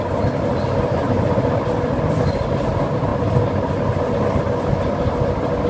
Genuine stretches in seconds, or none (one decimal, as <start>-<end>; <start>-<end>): 0.0-5.7